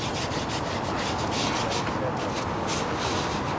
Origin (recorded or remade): recorded